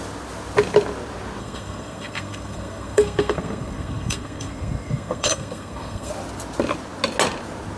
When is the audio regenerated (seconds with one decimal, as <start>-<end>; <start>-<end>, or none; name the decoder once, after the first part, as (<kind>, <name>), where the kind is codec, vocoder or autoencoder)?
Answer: 1.4-6.1 (codec, SNAC)